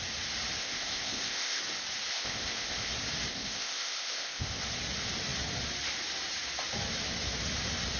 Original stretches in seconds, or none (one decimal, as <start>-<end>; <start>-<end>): 0.0-0.6; 1.6-2.1; 2.9-3.3; 4.6-8.0